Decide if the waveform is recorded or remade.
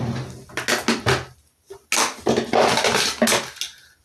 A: recorded